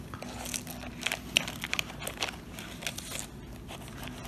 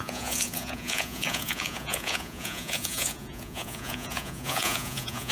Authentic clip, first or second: first